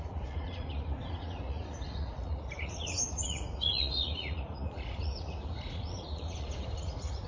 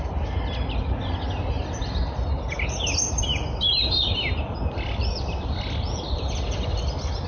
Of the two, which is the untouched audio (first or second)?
second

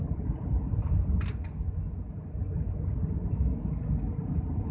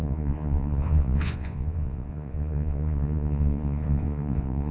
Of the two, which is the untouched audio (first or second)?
first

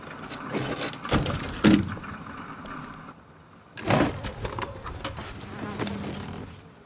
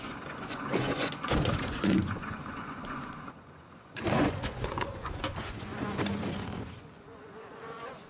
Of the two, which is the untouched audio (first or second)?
first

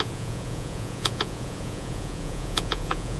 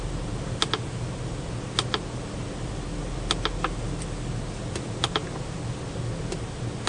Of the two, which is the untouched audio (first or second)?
second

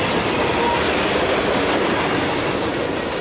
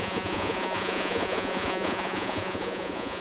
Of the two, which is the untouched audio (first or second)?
first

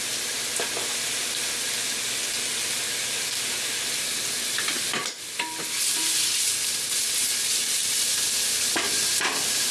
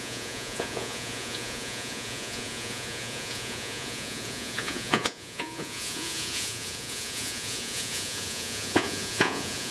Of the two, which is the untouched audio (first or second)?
first